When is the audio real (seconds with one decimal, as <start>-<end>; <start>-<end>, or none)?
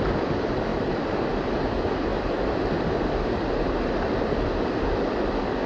0.0-5.7